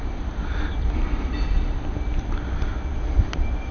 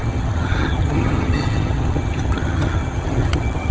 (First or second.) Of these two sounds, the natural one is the first